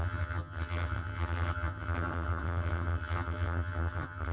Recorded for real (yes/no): no